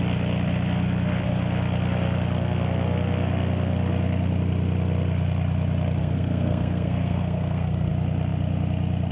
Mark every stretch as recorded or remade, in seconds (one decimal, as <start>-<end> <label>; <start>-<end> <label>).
0.0-6.0 recorded; 6.0-7.9 remade; 7.9-9.1 recorded